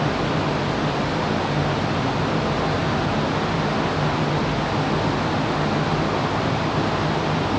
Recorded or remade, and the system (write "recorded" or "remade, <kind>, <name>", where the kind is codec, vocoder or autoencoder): recorded